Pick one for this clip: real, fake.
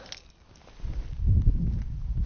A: real